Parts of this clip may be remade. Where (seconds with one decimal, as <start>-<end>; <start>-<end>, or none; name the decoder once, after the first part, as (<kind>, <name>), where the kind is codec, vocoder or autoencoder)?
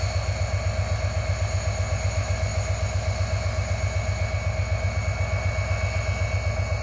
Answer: none